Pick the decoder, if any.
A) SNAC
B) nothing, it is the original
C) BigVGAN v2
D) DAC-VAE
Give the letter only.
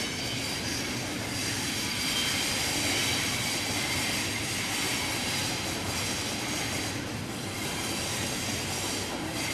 B